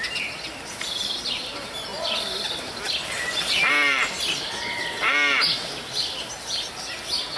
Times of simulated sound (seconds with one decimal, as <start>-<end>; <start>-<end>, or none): none